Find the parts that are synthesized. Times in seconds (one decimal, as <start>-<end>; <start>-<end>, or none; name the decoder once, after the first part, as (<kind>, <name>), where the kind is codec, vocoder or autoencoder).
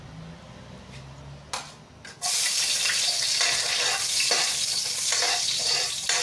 none